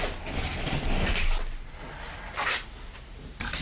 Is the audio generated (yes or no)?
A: no